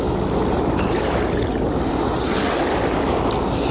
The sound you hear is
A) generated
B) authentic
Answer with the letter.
B